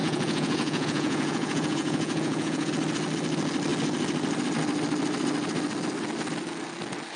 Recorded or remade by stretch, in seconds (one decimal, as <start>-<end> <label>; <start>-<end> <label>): 0.0-2.7 remade; 2.7-7.2 recorded